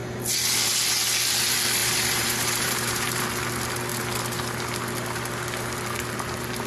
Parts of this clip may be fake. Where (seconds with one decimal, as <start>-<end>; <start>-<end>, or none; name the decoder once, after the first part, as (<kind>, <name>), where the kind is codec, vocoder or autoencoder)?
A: 1.8-3.2 (vocoder, BigVGAN v2)